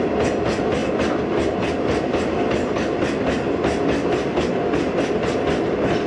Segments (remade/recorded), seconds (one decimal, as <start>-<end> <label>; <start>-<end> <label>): 0.0-6.1 recorded